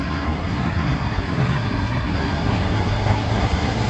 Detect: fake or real fake